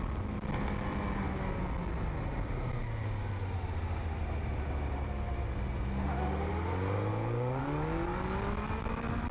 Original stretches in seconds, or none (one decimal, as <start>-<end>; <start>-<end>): 0.0-7.1; 7.6-9.3